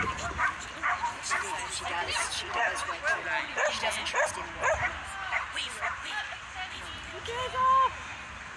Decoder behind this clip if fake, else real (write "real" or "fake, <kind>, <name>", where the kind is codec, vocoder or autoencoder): real